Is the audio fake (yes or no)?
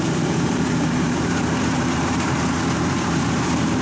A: yes